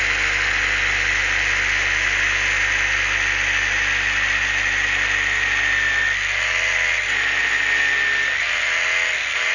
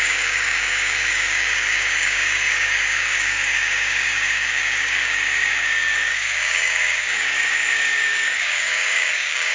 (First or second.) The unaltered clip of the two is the first